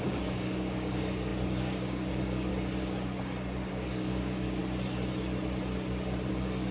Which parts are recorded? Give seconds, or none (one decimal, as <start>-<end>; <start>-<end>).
2.5-3.7; 4.6-6.3